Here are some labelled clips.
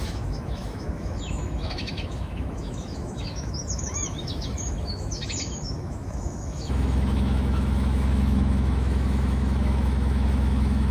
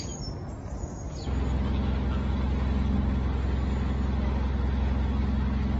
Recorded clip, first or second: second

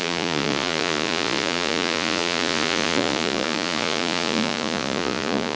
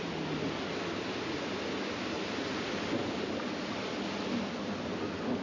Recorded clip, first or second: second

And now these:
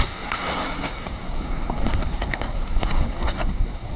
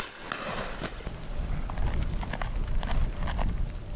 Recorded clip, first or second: second